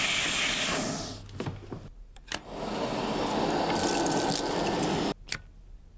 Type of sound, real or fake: real